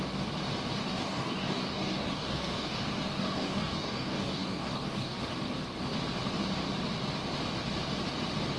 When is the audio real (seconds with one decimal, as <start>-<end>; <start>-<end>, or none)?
0.0-0.8; 5.2-8.6